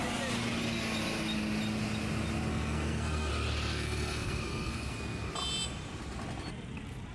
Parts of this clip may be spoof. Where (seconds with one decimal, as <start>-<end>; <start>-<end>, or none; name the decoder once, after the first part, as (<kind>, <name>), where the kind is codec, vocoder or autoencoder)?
2.5-3.3 (codec, SNAC); 3.7-5.3